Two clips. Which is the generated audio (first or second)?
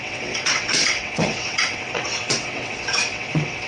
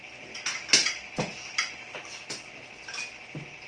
first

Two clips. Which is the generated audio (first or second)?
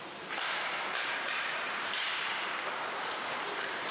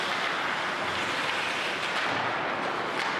first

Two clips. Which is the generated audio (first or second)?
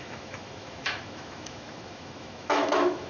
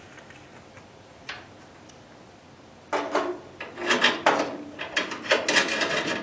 first